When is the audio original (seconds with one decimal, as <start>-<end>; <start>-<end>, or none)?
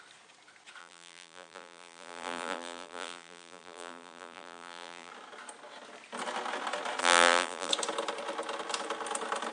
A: 0.0-0.8; 5.1-7.0; 7.7-9.5